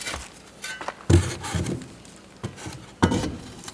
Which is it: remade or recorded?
recorded